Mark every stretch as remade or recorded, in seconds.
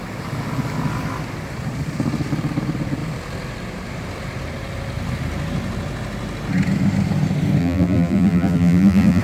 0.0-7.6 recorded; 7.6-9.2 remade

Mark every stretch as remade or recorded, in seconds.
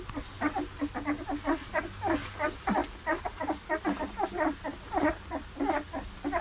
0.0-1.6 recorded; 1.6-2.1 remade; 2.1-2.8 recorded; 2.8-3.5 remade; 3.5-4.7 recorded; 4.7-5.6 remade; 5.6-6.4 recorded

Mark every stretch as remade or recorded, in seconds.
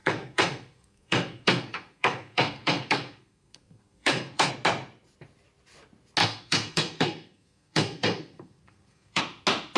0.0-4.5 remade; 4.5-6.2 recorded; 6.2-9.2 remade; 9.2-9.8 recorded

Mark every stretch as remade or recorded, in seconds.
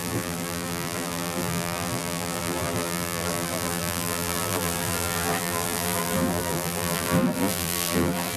0.0-8.4 remade